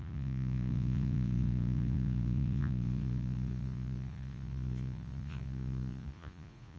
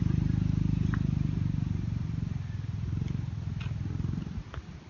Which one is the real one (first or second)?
second